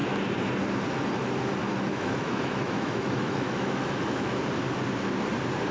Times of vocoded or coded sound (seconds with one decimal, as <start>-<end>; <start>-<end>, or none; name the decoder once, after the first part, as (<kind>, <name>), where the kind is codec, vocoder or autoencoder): 1.6-4.4 (autoencoder, DAC-VAE)